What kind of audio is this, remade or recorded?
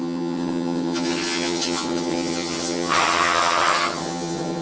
remade